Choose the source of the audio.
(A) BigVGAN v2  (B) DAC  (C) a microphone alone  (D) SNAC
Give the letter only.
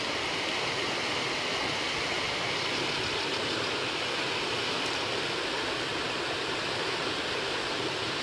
C